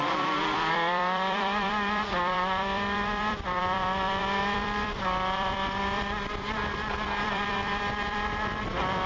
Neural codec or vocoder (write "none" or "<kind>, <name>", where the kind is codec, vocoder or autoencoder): vocoder, BigVGAN v2